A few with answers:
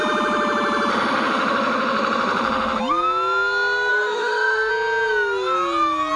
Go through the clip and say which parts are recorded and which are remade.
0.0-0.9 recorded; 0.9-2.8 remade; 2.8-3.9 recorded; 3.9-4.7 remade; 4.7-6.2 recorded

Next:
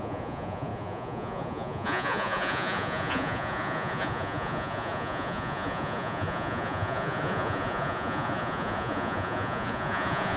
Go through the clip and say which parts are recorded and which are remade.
0.0-10.4 remade